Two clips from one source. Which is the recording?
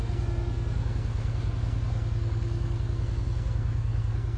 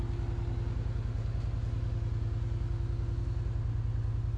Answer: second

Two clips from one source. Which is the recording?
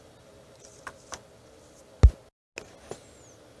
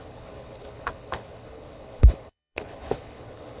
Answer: first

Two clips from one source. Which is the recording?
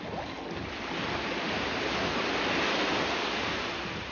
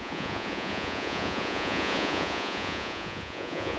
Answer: first